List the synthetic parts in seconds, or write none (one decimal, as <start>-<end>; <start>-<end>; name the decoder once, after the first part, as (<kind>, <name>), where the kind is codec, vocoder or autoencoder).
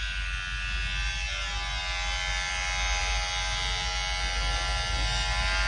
none